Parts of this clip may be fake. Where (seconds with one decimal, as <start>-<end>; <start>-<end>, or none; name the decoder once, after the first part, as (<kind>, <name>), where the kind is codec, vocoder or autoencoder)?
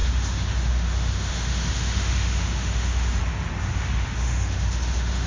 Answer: 0.0-3.2 (autoencoder, DAC-VAE); 3.6-5.3